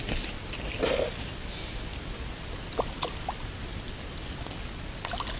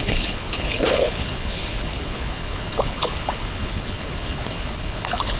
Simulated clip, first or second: second